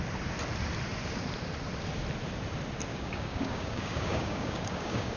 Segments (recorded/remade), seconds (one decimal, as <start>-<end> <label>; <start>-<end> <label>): 0.0-2.9 recorded; 2.9-5.2 remade